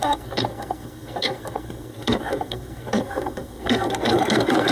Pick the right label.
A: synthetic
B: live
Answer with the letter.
A